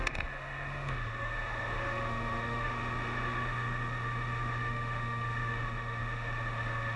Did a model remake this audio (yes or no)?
yes